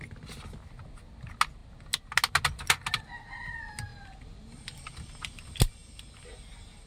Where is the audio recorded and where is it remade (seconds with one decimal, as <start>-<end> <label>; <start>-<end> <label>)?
0.0-6.9 recorded